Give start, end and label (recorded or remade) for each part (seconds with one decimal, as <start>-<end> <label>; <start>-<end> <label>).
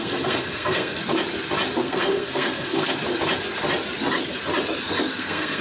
0.0-1.0 remade; 1.0-1.8 recorded; 1.8-2.9 remade; 2.9-5.1 recorded; 5.1-5.6 remade